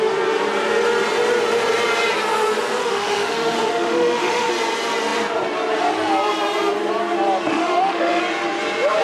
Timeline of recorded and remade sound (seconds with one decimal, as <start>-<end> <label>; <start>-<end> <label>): 0.0-2.8 recorded; 2.8-4.5 remade; 4.5-7.5 recorded; 7.5-8.2 remade; 8.2-9.0 recorded